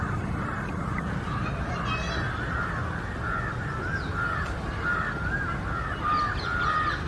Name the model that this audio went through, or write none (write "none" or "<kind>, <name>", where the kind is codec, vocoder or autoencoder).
none